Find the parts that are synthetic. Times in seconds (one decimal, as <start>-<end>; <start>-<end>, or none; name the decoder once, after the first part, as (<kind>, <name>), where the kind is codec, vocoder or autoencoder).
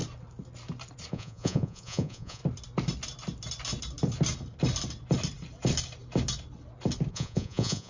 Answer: 1.1-2.4 (vocoder, Vocos); 7.1-7.9